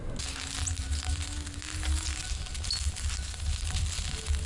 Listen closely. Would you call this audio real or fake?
real